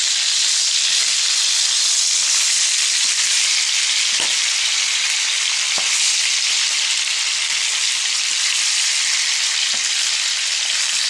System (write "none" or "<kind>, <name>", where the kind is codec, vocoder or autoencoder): none